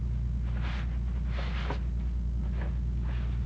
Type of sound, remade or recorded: recorded